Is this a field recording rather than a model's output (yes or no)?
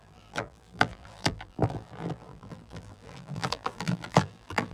no